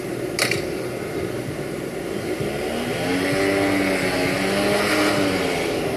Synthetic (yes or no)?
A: no